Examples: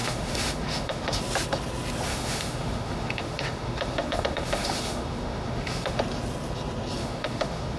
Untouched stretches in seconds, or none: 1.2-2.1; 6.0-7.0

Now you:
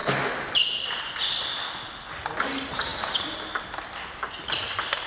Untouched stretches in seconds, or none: 0.0-5.1

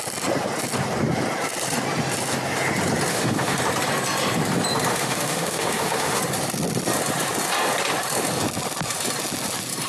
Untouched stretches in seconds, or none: 0.0-3.1; 3.6-4.9; 6.2-9.9

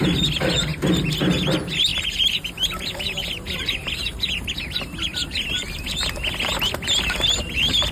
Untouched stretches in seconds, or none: 0.0-1.9; 4.5-5.2; 5.8-7.9

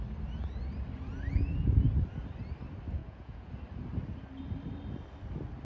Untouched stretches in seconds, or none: 0.0-3.0; 3.5-5.6

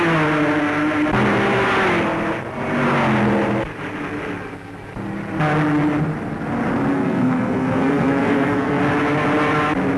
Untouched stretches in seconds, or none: 0.0-6.9; 8.8-10.0

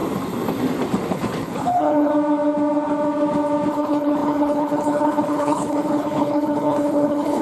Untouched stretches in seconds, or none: 0.0-1.1; 2.1-3.7